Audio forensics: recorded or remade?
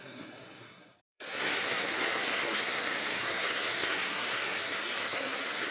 remade